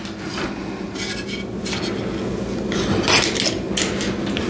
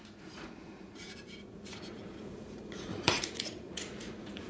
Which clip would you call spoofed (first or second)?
second